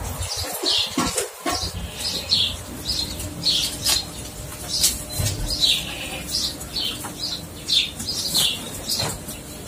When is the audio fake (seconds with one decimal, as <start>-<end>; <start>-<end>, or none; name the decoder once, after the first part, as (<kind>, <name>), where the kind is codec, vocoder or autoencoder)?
0.0-4.5 (vocoder, BigVGAN v2); 8.2-9.7

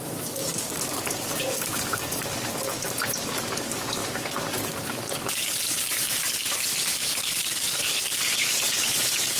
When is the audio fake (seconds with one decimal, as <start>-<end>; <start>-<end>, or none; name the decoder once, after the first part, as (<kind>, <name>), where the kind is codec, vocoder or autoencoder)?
0.0-9.4 (codec, DAC)

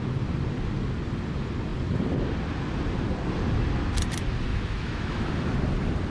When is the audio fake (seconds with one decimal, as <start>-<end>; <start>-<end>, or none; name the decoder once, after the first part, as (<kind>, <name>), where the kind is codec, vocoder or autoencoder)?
4.5-5.3 (autoencoder, DAC-VAE)

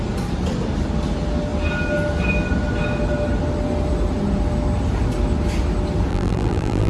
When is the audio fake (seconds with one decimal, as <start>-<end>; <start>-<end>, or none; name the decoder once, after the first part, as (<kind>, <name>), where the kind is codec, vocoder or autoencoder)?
6.1-6.9 (vocoder, BigVGAN v2)

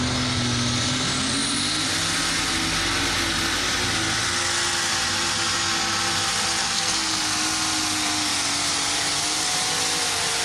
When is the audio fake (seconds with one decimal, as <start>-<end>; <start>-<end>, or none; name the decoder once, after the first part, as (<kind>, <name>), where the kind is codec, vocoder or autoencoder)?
6.6-7.2 (codec, SNAC)

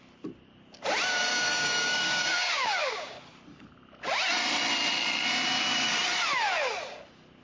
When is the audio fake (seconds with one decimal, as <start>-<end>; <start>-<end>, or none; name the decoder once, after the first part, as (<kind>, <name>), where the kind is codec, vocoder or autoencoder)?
1.3-3.2 (codec, DAC)

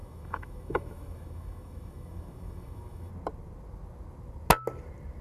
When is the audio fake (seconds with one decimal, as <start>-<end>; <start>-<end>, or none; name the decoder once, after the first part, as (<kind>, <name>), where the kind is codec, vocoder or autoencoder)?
0.0-3.1 (autoencoder, DAC-VAE)

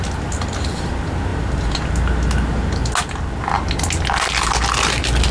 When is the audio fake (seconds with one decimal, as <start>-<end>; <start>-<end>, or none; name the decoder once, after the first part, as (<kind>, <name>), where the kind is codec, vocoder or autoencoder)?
none